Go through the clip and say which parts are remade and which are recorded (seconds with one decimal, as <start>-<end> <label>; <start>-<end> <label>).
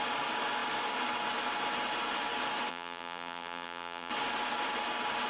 0.0-2.7 recorded; 2.7-4.1 remade; 4.1-5.3 recorded